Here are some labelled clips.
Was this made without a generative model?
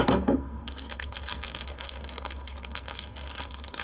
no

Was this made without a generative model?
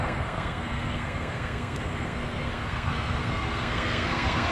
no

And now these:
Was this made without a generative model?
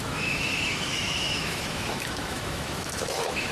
no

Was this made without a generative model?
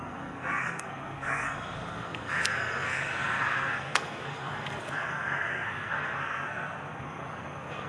no